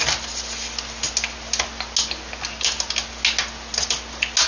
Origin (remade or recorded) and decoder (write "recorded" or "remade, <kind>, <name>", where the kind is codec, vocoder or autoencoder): recorded